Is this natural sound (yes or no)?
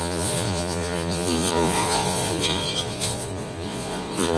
no